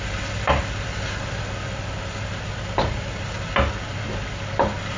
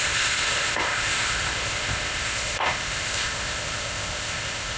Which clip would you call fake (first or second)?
second